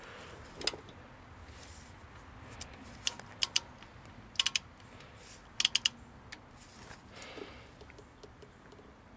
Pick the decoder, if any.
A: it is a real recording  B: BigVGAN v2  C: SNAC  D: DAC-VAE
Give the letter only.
A